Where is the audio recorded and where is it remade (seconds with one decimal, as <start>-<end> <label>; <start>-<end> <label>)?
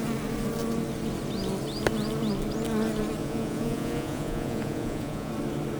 0.0-3.2 recorded; 3.2-5.3 remade; 5.3-5.8 recorded